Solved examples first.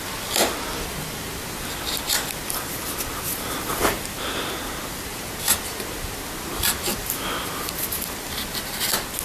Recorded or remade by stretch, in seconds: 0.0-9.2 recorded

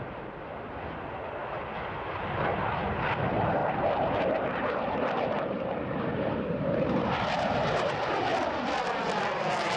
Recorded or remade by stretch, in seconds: 0.0-3.6 recorded; 3.6-7.9 remade; 7.9-9.8 recorded

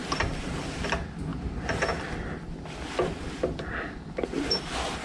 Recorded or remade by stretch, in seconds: 0.0-5.0 recorded

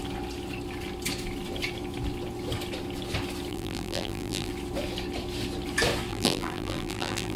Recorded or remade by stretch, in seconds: 0.0-3.5 recorded; 3.5-4.5 remade; 4.5-6.1 recorded; 6.1-7.4 remade

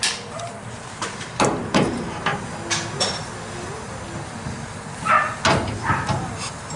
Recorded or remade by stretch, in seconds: 0.0-2.3 remade; 2.3-6.8 recorded

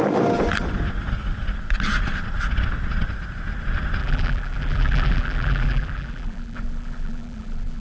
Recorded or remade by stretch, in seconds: 0.0-4.0 recorded; 4.0-7.8 remade

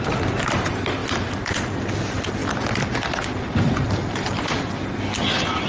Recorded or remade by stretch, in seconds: 0.0-1.0 recorded; 1.0-1.6 remade; 1.6-2.4 recorded; 2.4-4.7 remade; 4.7-5.7 recorded